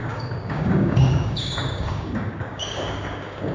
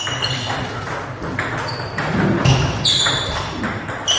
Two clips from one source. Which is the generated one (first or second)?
first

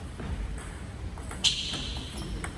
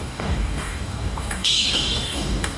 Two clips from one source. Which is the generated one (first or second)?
second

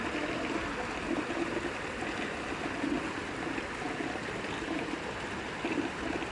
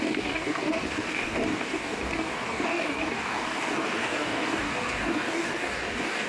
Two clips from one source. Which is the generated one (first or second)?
second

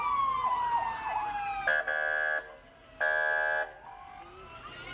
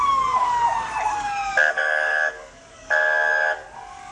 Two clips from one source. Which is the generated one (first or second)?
second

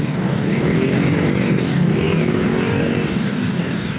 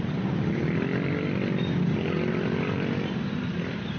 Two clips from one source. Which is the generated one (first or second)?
first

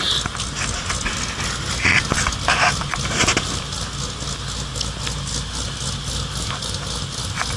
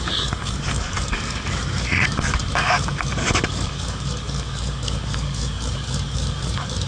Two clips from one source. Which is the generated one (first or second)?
second